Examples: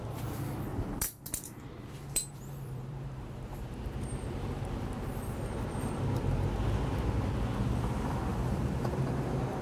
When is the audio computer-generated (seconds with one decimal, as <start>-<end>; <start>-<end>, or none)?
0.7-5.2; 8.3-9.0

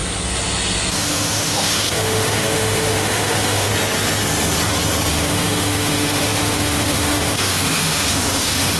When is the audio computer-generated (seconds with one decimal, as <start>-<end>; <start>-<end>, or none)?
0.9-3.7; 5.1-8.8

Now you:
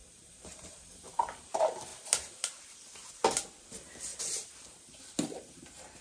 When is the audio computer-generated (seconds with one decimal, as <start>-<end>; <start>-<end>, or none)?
0.0-1.5; 4.1-5.0